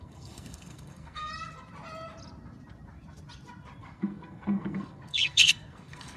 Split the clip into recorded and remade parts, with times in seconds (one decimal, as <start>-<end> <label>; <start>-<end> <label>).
0.0-1.3 remade; 1.3-3.8 recorded; 3.8-6.2 remade